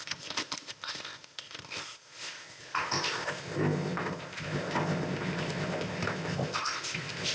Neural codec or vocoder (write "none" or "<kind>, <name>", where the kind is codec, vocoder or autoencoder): codec, ZipCodec